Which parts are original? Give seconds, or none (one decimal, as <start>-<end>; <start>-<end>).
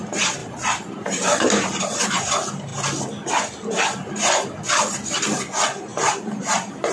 0.0-0.4; 2.3-5.9